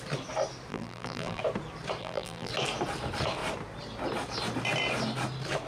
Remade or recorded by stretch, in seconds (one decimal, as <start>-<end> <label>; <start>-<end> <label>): 0.0-0.7 recorded; 0.7-1.4 remade; 1.4-2.0 recorded; 2.0-2.5 remade; 2.5-5.7 recorded